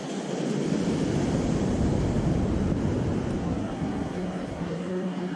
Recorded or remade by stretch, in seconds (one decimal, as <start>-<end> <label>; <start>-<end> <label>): 0.0-3.4 recorded; 3.4-5.4 remade